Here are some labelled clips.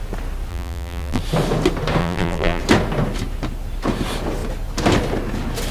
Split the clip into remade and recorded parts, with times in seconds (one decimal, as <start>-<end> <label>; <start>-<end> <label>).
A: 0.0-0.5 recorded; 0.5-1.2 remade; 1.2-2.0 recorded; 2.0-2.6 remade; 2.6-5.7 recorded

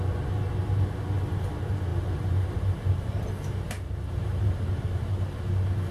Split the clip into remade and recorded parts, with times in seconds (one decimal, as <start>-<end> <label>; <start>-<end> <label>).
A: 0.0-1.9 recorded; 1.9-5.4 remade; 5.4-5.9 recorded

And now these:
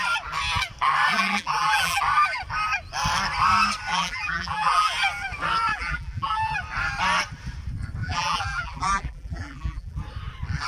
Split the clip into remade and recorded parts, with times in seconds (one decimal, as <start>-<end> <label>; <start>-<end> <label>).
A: 0.0-1.1 recorded; 1.1-2.0 remade; 2.0-3.9 recorded; 3.9-4.9 remade; 4.9-5.7 recorded; 5.7-6.6 remade; 6.6-8.0 recorded; 8.0-10.0 remade; 10.0-10.7 recorded